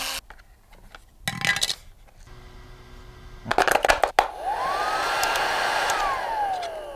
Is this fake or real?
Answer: real